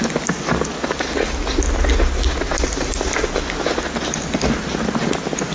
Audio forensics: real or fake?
real